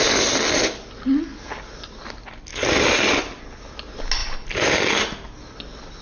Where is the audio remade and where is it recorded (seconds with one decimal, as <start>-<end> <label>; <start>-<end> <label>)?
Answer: 0.0-2.5 recorded; 2.5-3.1 remade; 3.1-4.2 recorded; 4.2-4.8 remade; 4.8-6.0 recorded